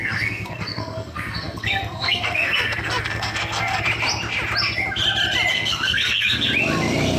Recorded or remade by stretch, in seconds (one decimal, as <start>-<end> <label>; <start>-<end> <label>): 0.0-3.8 remade; 3.8-5.5 recorded; 5.5-6.5 remade; 6.5-7.2 recorded

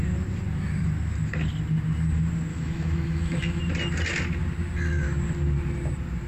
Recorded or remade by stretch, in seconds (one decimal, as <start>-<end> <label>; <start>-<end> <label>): 0.0-2.5 recorded; 2.5-3.6 remade; 3.6-6.3 recorded

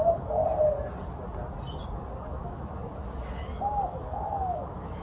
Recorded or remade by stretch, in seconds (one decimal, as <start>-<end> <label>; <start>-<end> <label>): 0.0-0.4 remade; 0.4-2.3 recorded; 2.3-2.8 remade; 2.8-3.9 recorded; 3.9-5.0 remade

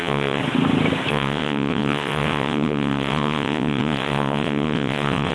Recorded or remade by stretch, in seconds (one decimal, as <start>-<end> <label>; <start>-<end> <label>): 0.0-0.4 remade; 0.4-1.1 recorded; 1.1-5.3 remade